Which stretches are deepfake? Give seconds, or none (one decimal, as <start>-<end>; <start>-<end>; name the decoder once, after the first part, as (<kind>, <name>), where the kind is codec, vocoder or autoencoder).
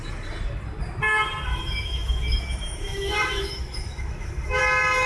1.5-4.6 (autoencoder, DAC-VAE)